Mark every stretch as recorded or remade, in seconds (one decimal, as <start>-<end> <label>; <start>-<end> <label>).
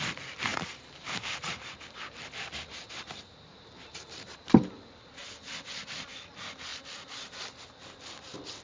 0.0-0.5 recorded; 0.5-1.7 remade; 1.7-8.6 recorded